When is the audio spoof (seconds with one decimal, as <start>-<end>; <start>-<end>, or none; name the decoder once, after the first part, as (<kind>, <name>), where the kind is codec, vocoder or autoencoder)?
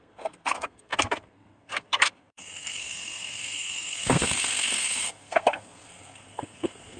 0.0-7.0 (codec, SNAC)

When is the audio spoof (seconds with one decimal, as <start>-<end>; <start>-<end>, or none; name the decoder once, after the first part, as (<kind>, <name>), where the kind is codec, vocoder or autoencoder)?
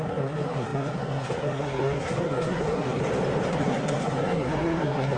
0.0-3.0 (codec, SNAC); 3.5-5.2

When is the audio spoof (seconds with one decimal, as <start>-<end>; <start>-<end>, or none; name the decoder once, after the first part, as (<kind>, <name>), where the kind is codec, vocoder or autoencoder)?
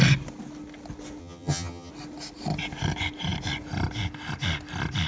1.2-1.9 (vocoder, HiFi-GAN)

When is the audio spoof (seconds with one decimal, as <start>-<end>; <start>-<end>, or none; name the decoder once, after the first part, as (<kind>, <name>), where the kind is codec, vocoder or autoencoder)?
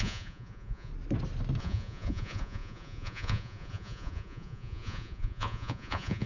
0.0-0.9 (vocoder, Vocos); 1.6-6.3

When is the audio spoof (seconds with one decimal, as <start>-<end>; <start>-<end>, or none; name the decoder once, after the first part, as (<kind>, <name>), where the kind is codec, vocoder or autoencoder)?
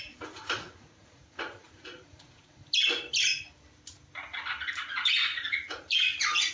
0.0-2.6 (vocoder, Vocos); 4.7-6.5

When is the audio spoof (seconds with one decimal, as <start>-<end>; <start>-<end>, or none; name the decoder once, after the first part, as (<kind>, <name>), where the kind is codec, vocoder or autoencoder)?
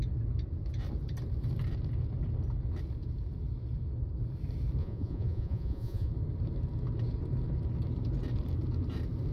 4.8-6.1 (vocoder, Vocos)